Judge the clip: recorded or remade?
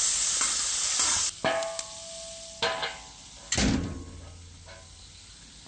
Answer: recorded